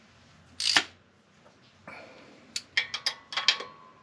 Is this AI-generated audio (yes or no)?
no